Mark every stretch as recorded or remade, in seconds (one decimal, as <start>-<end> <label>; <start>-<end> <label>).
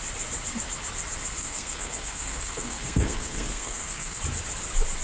0.0-1.4 recorded; 1.4-4.2 remade; 4.2-5.0 recorded